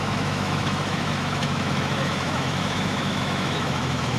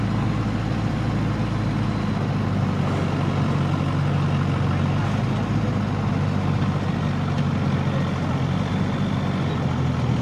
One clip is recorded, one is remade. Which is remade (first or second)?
first